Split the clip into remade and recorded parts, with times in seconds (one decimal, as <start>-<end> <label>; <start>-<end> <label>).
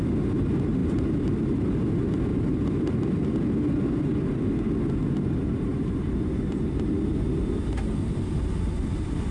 0.0-2.3 recorded; 2.3-3.2 remade; 3.2-9.3 recorded